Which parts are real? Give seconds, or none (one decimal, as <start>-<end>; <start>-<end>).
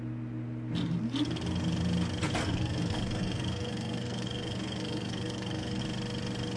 0.0-2.4; 5.8-6.6